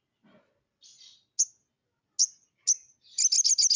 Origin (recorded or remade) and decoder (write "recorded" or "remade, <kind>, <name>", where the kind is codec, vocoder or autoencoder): recorded